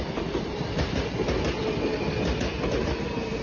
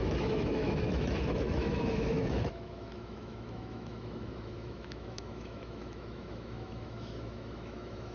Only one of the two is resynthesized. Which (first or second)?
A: second